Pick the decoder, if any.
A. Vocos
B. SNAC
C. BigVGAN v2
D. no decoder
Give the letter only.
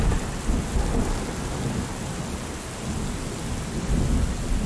D